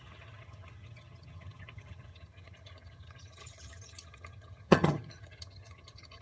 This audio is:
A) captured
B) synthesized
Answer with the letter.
B